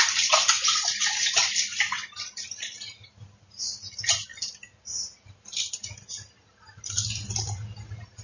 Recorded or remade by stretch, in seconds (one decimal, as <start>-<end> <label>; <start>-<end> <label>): 0.0-8.2 recorded